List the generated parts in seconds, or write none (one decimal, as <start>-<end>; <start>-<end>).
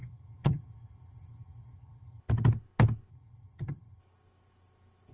0.0-2.2; 3.1-4.0